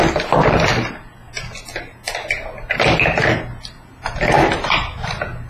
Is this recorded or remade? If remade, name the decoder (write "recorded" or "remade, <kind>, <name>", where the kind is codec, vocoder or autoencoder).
recorded